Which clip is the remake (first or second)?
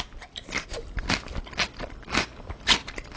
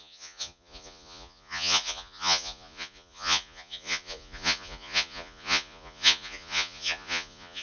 second